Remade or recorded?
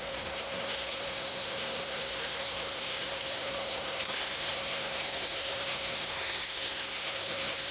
remade